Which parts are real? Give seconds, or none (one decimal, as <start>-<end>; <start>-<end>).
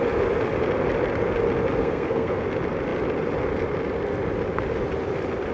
0.0-1.8; 2.4-5.5